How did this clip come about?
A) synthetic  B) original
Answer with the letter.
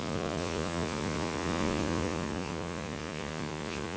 A